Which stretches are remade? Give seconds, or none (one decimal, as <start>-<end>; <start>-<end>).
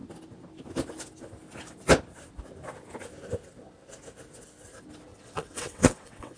5.1-6.4